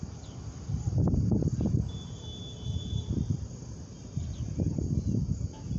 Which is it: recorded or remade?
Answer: recorded